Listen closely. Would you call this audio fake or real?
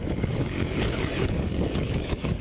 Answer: fake